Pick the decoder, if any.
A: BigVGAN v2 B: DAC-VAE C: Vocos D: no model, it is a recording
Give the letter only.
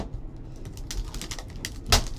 D